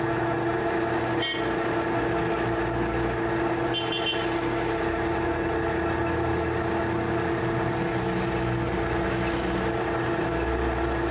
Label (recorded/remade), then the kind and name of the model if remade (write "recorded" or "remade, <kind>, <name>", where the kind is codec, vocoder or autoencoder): recorded